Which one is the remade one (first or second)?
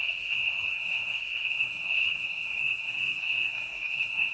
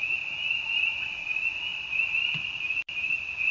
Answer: first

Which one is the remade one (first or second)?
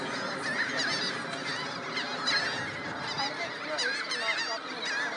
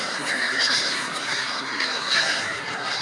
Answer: second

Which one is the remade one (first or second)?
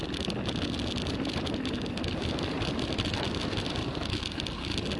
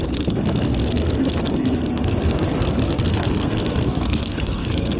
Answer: second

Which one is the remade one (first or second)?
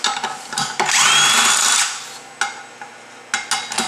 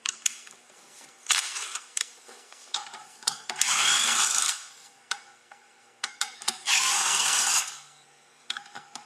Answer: second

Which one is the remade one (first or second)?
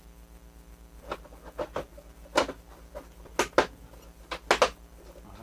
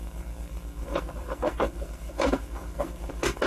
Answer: second